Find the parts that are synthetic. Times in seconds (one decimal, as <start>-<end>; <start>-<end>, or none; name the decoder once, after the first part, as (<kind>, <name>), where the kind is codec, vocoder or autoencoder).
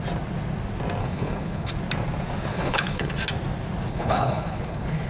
1.0-1.7 (codec, HILCodec); 2.5-3.1; 3.9-5.1